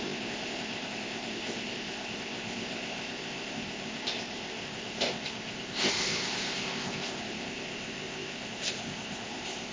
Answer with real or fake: fake